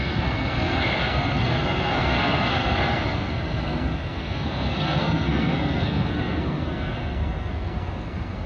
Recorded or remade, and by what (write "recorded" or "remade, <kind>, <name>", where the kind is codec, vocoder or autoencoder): remade, codec, SNAC